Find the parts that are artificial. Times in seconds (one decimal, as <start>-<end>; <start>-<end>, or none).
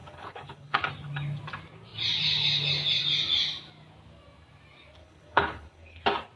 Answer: 0.0-0.9; 5.0-6.0